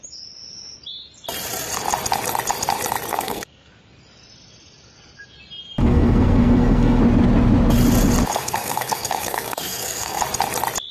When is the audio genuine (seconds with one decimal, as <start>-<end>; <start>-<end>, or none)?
0.0-3.1; 3.7-5.8; 7.0-8.3; 10.2-10.9